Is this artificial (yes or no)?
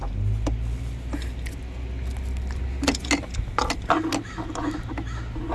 no